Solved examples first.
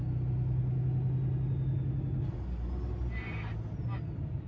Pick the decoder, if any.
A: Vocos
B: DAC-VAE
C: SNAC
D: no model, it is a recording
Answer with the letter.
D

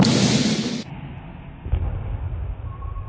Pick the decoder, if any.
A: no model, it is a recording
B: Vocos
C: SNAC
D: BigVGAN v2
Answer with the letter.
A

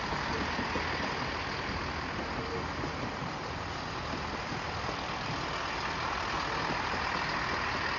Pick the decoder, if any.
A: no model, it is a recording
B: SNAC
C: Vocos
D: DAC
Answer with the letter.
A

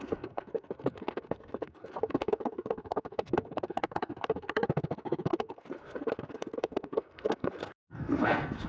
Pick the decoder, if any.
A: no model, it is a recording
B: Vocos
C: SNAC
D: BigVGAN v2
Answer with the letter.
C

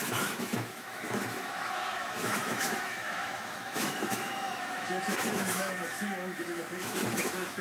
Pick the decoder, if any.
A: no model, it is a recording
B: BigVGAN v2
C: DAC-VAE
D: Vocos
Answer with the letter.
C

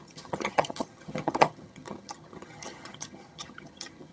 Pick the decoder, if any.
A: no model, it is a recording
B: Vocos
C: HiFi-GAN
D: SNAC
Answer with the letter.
C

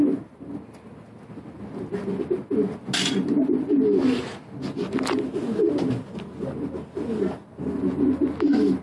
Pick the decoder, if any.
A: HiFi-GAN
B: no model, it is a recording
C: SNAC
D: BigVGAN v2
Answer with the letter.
B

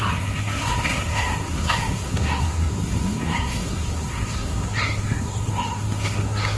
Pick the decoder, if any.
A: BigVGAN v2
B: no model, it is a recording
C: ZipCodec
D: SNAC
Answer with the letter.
D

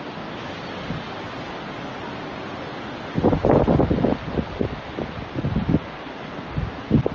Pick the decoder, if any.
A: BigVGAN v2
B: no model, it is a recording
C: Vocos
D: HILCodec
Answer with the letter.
B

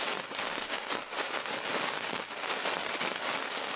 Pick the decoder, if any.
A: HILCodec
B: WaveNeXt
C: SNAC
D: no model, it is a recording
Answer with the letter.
D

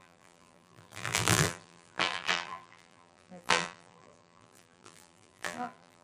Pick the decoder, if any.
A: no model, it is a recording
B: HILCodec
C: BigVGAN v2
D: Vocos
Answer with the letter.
C